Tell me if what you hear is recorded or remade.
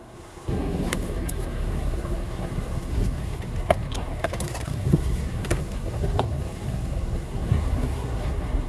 remade